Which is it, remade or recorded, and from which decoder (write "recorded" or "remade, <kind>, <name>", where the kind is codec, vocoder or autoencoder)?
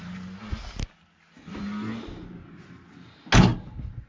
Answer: recorded